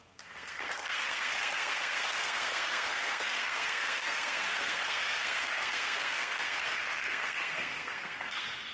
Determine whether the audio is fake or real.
fake